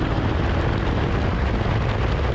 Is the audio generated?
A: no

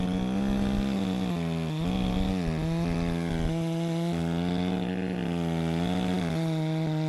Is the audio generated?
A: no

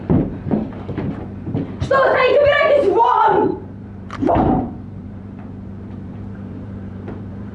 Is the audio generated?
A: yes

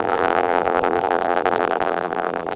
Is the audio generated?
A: yes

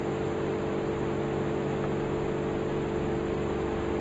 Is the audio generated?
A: no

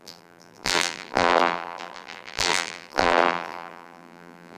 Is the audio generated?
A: yes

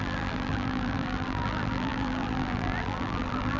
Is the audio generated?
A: yes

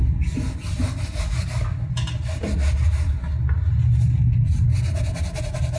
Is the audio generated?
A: no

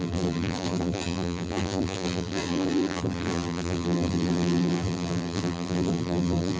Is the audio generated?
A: yes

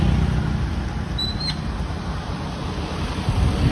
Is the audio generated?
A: no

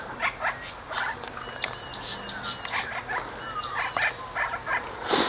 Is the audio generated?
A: no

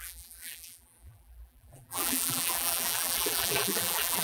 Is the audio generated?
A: yes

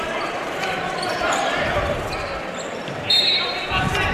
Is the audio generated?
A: yes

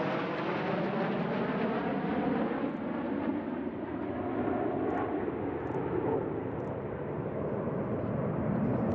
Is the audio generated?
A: no